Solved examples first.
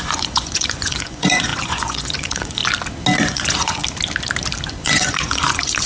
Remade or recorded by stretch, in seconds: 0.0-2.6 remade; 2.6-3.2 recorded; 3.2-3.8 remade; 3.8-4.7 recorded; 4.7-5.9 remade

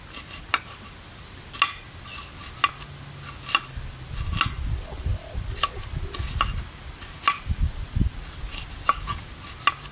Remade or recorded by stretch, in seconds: 0.0-9.9 recorded

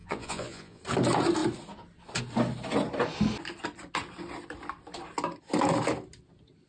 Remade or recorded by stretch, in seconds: 0.0-0.8 remade; 0.8-6.7 recorded

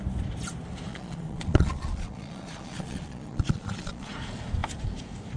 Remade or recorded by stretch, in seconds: 0.0-0.9 recorded; 0.9-4.1 remade; 4.1-5.4 recorded

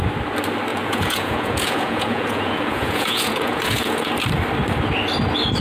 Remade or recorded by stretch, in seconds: 0.0-0.7 recorded; 0.7-4.1 remade; 4.1-5.6 recorded

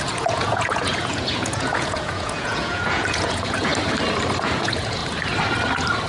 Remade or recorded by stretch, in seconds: 0.0-3.7 remade; 3.7-4.4 recorded; 4.4-5.0 remade; 5.0-6.1 recorded